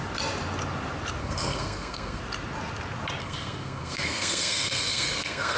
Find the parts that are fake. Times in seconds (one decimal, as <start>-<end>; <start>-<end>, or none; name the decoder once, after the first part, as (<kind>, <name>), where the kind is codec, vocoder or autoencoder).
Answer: 1.2-2.2 (codec, SNAC); 3.2-5.6